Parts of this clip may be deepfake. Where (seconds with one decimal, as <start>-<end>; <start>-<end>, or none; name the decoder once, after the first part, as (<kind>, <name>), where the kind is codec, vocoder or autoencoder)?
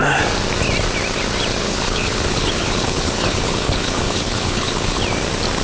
1.6-5.0 (codec, HILCodec)